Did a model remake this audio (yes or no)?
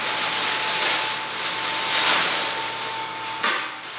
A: no